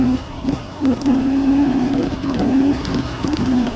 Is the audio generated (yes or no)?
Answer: yes